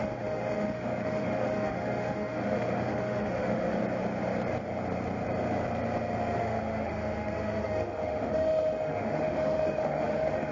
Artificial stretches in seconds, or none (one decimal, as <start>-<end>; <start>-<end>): 0.0-3.8; 6.4-10.5